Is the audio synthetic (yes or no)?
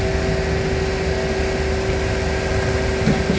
no